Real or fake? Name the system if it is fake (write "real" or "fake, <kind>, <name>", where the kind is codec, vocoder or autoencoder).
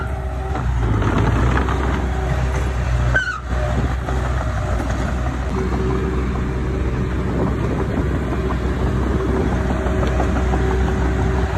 real